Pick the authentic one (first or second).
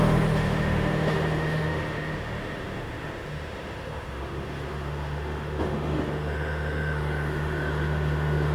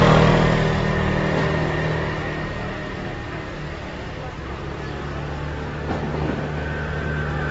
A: second